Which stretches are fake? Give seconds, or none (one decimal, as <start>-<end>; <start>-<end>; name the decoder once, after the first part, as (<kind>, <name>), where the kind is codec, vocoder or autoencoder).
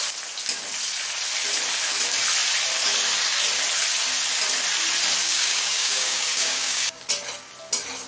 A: 5.2-7.0 (codec, DAC)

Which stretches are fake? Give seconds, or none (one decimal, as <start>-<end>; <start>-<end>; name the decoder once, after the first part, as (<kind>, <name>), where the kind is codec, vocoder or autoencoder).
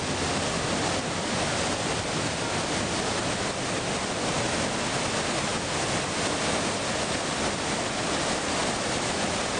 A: none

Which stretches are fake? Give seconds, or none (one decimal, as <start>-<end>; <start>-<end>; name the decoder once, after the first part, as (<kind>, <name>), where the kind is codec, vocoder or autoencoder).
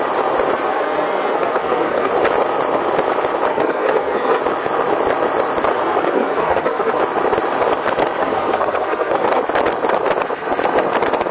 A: 0.7-2.1 (codec, SNAC); 3.5-4.4; 5.7-7.0; 8.2-9.4